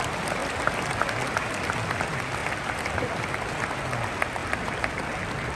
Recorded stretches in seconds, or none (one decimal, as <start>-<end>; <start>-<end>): 0.0-5.6